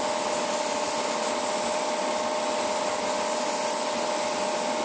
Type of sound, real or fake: real